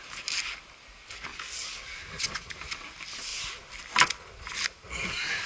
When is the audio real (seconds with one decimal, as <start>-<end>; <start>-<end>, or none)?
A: 0.0-1.3; 2.0-5.5